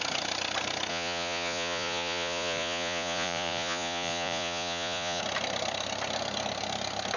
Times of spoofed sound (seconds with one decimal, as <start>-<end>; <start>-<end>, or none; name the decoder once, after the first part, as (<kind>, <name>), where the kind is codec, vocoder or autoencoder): 0.9-5.2 (vocoder, Vocos)